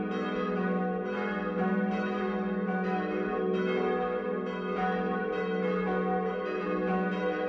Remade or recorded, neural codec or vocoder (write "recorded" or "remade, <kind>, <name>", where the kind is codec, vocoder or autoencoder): recorded